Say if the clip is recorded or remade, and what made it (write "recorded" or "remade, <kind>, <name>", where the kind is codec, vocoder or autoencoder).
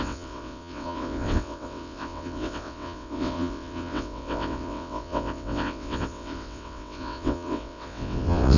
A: remade, vocoder, WaveNeXt